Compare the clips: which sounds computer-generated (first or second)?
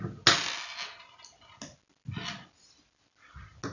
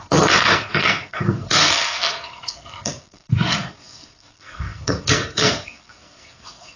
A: second